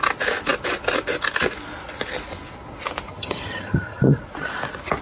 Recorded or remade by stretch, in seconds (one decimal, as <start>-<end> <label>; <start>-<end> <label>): 0.0-3.1 recorded; 3.1-4.2 remade; 4.2-5.0 recorded